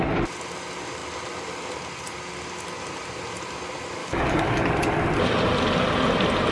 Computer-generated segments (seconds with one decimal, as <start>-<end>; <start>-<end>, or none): 4.0-4.6